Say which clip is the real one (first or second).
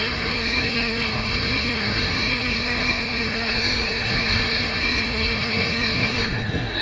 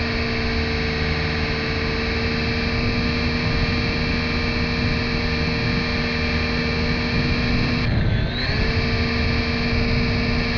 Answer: second